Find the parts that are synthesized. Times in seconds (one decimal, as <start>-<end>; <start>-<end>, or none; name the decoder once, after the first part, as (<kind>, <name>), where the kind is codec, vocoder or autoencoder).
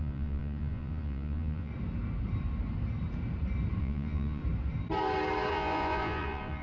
0.0-1.7 (vocoder, Vocos); 3.8-4.4; 5.5-6.6